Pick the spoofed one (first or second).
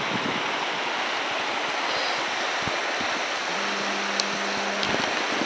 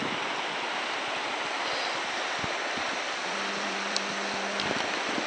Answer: second